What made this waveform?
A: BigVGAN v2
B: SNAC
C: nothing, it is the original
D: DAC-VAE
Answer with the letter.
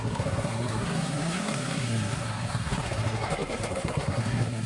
B